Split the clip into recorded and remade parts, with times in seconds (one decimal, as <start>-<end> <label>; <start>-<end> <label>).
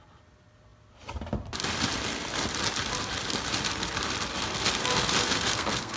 0.0-5.2 recorded; 5.2-6.0 remade